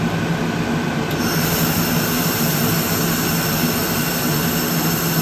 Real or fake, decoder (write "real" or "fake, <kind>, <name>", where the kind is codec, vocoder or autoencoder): real